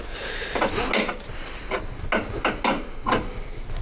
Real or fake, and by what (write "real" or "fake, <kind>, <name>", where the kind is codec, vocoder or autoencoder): real